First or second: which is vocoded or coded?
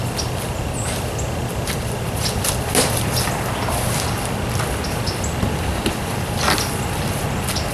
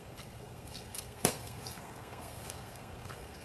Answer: second